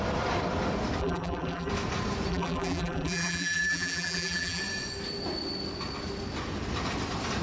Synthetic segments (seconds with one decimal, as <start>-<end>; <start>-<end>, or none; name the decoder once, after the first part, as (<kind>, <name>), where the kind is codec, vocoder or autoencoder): 1.0-1.7 (vocoder, BigVGAN v2); 2.3-4.6

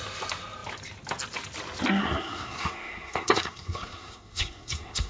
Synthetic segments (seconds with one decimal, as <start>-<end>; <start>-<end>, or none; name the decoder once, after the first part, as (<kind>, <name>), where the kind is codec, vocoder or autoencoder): 2.0-5.1 (codec, SNAC)

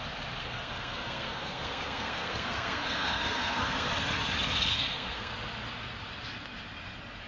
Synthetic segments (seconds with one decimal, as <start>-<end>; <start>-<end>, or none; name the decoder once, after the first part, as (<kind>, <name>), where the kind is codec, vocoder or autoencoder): 0.4-3.9 (codec, SNAC); 4.7-5.3

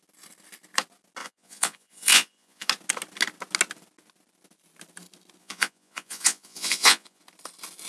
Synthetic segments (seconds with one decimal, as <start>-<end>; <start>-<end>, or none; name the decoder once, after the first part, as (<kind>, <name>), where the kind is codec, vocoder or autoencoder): 1.2-2.7 (vocoder, Vocos); 5.4-7.2

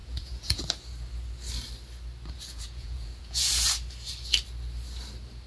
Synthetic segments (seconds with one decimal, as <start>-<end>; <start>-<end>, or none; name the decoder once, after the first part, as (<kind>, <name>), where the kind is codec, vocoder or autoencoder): 0.0-0.6 (vocoder, Vocos); 2.5-3.5

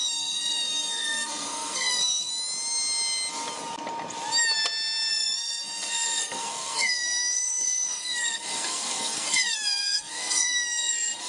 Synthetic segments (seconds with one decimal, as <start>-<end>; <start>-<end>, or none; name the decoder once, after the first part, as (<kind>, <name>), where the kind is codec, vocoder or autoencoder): 0.0-2.3 (codec, SNAC); 5.1-11.3